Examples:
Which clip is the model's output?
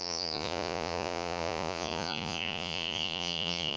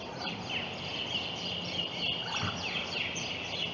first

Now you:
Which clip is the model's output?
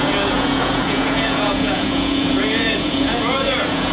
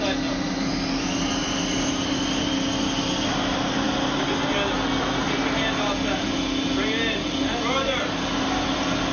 first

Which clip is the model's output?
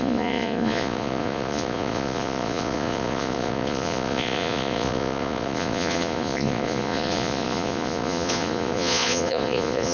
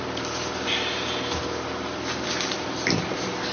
first